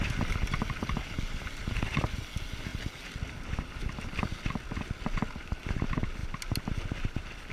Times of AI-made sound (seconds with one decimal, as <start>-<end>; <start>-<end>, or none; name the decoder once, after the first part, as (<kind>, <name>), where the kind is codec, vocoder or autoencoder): none